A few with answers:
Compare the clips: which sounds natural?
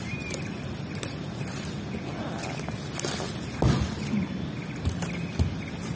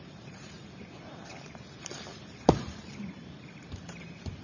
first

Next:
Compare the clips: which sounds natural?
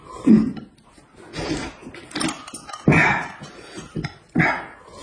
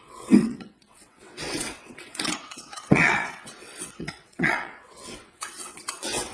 first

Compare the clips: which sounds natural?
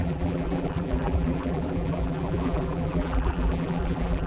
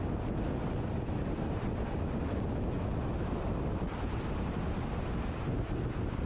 second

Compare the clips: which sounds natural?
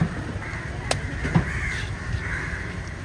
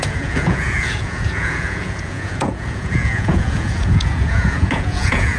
first